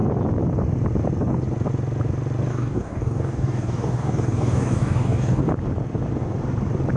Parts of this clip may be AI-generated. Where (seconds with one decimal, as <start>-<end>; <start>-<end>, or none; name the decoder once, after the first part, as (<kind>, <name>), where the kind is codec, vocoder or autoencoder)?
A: 2.5-5.4 (codec, DAC)